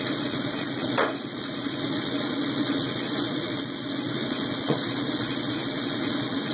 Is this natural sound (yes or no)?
no